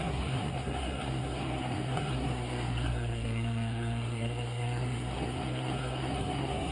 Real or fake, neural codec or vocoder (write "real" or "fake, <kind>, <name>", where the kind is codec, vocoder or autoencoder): fake, codec, SNAC